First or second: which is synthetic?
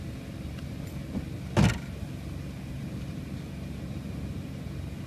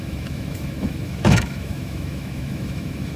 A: second